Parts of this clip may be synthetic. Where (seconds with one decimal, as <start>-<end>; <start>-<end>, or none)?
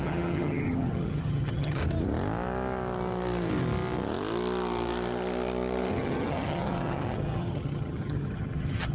0.0-1.8; 5.9-8.9